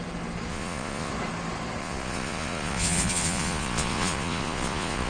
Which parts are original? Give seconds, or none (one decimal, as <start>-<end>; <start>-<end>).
0.0-0.5; 1.1-1.8